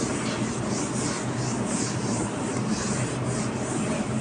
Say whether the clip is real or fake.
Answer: real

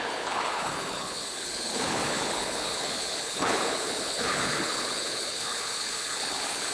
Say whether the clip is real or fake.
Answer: fake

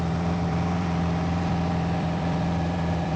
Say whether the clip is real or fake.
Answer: fake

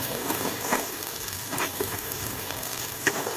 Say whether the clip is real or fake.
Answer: fake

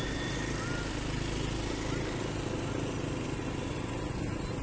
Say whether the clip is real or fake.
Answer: real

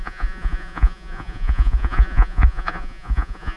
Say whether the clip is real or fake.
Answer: fake